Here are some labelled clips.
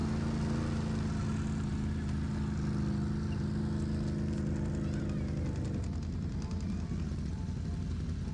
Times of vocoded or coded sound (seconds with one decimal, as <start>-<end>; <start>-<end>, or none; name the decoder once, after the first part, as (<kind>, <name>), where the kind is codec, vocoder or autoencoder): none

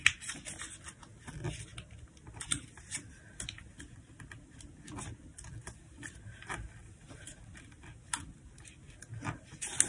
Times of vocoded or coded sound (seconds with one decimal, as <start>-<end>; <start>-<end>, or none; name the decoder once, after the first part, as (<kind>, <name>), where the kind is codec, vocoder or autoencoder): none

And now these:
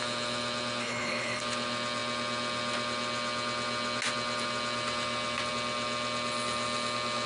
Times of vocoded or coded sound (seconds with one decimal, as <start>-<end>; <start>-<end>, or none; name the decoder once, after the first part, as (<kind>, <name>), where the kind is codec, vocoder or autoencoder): 0.8-1.4 (codec, HILCodec)

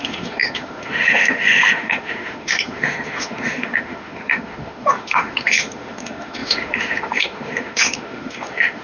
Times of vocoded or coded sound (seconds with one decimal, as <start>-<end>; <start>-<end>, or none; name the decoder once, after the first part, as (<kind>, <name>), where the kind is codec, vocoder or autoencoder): 0.0-8.8 (autoencoder, DAC-VAE)

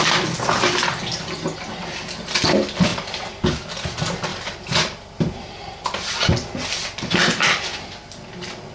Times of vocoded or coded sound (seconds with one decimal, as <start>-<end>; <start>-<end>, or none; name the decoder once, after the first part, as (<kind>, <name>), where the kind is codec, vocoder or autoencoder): 4.3-5.6 (vocoder, BigVGAN v2)

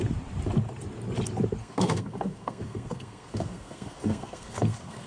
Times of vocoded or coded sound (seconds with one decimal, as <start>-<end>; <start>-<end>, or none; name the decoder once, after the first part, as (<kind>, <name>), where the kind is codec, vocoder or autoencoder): 1.6-5.1 (codec, SNAC)

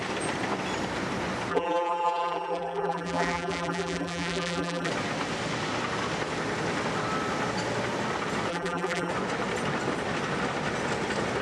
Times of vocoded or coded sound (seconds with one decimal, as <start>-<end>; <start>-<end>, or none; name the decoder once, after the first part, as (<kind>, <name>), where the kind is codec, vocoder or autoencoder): 1.5-4.9 (vocoder, BigVGAN v2); 8.5-9.1